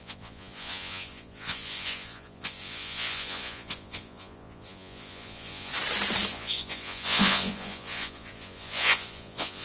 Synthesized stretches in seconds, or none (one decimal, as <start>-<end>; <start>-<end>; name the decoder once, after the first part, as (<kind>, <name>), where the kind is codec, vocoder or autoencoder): 0.0-5.7 (vocoder, Vocos); 6.3-9.6